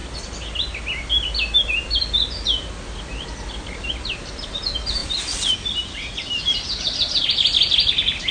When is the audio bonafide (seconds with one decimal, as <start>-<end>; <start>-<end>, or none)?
0.0-8.3